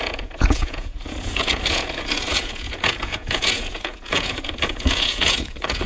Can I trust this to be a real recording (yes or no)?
no